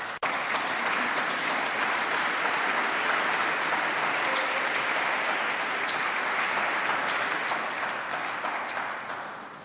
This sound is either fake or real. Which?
real